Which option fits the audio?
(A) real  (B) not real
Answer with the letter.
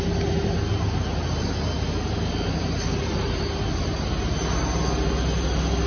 A